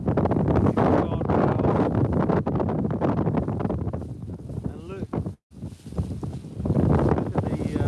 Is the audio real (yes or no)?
yes